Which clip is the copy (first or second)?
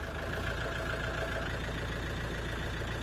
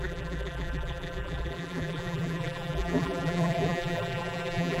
second